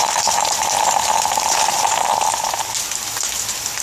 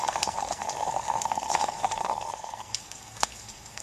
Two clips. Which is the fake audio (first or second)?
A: second